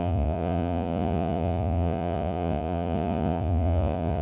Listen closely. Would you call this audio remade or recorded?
remade